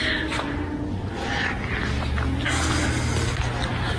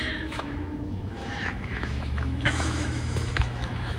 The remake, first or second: second